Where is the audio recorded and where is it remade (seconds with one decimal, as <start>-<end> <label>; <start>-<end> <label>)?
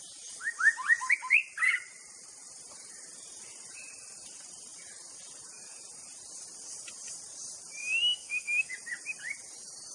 0.0-7.8 recorded; 7.8-8.7 remade; 8.7-9.9 recorded